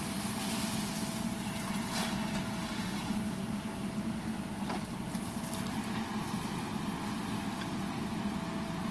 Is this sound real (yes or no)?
yes